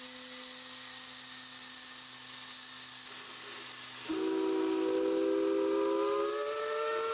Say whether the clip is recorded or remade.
recorded